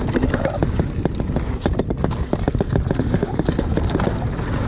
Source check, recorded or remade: recorded